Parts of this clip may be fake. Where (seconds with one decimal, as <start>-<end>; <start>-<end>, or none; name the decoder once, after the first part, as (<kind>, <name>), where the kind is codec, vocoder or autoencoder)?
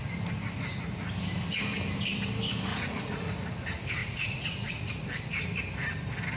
2.7-3.3 (vocoder, Vocos); 4.0-5.2